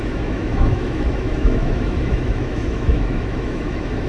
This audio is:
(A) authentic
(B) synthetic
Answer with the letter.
B